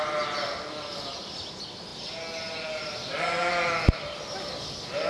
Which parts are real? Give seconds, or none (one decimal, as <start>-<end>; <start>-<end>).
0.0-5.1